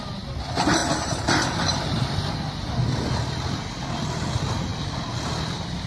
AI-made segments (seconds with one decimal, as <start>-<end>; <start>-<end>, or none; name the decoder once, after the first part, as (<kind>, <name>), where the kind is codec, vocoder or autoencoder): none